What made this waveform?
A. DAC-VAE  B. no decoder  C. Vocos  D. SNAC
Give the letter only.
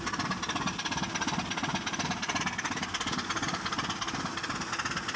B